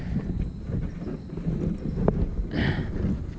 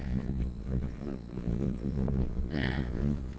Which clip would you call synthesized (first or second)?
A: second